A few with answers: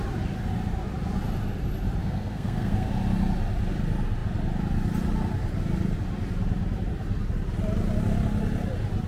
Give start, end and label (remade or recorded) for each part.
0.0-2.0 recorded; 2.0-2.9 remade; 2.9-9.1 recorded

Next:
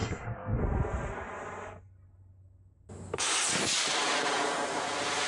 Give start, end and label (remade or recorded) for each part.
0.0-0.6 remade; 0.6-5.3 recorded

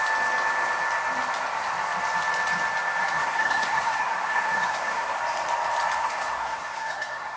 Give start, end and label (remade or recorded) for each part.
0.0-3.0 recorded; 3.0-5.2 remade; 5.2-6.0 recorded; 6.0-7.4 remade

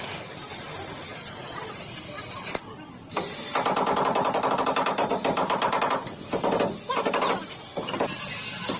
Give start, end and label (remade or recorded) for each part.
0.0-1.1 recorded; 1.1-1.8 remade; 1.8-8.8 recorded

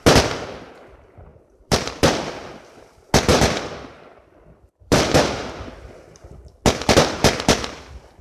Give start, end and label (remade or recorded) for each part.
0.0-1.3 recorded; 1.3-2.3 remade; 2.3-3.3 recorded; 3.3-6.3 remade; 6.3-8.2 recorded

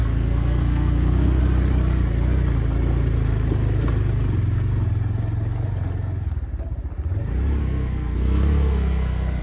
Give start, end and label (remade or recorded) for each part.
0.0-1.4 remade; 1.4-7.6 recorded; 7.6-9.4 remade

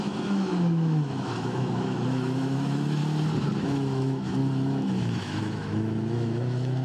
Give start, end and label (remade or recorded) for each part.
0.0-3.0 remade; 3.0-3.6 recorded; 3.6-6.8 remade